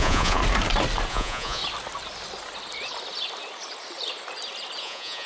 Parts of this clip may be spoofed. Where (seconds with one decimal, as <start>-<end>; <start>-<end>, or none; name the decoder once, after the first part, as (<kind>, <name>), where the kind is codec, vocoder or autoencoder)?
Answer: 0.0-0.4 (vocoder, Vocos); 1.1-1.6; 4.8-5.3